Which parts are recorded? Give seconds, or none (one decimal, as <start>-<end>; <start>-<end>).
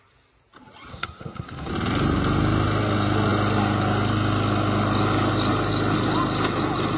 0.0-0.9; 1.7-7.0